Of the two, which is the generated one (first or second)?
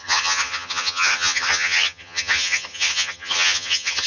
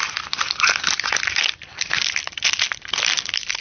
first